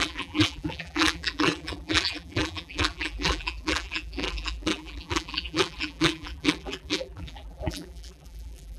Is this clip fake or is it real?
fake